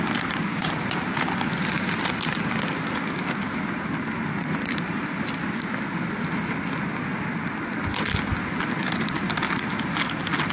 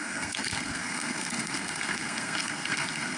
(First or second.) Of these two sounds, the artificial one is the second